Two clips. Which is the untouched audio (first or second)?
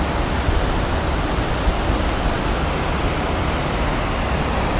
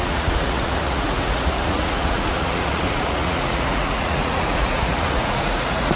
first